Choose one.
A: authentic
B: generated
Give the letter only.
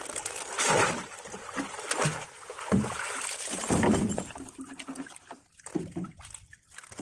A